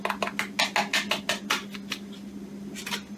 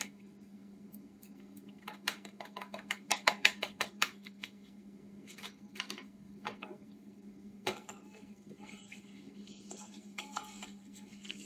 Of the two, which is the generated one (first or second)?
second